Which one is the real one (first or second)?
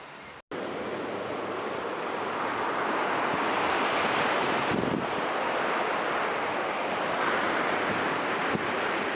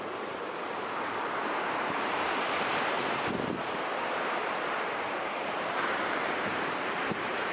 first